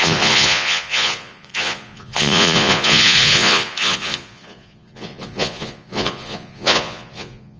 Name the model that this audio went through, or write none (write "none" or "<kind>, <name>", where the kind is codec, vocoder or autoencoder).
vocoder, Vocos